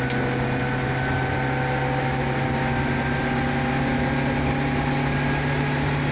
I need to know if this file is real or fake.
real